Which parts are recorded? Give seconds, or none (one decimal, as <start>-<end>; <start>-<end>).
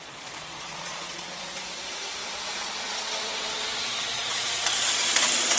none